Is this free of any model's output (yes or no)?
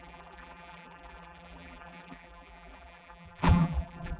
no